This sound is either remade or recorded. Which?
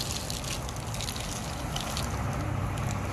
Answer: recorded